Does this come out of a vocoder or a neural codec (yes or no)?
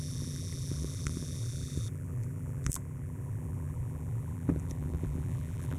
yes